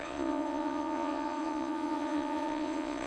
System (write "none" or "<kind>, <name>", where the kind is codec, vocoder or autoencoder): vocoder, Vocos